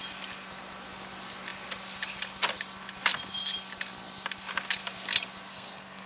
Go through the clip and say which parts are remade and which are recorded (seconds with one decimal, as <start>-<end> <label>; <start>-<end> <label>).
0.0-5.5 recorded; 5.5-6.1 remade